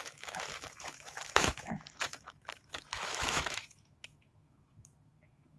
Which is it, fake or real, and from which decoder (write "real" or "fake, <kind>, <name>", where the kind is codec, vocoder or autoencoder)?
fake, autoencoder, DAC-VAE